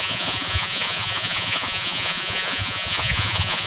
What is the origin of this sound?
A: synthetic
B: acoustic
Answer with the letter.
A